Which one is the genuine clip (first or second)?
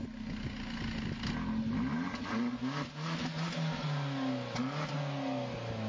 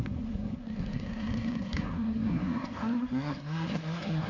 first